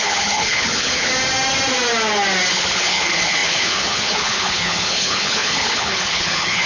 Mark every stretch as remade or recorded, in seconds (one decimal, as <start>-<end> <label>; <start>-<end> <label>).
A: 0.0-1.1 remade; 1.1-2.5 recorded; 2.5-6.7 remade